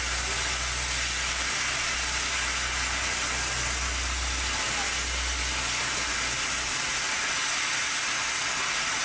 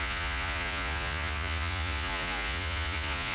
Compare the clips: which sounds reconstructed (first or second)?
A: second